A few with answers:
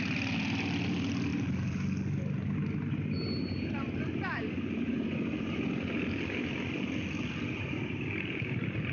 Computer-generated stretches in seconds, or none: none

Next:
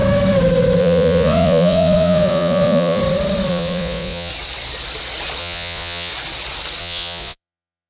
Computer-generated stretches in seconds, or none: 0.8-3.0 (vocoder, Vocos); 3.5-4.3; 5.4-6.1; 6.8-7.9

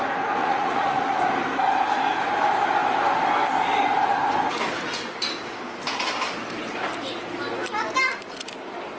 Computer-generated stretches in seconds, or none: 0.4-1.2 (vocoder, Vocos)

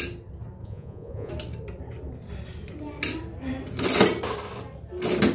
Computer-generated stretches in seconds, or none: 0.6-1.3 (vocoder, Vocos)

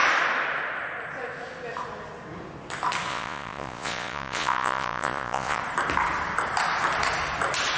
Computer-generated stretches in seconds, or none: 3.1-5.6 (vocoder, Vocos)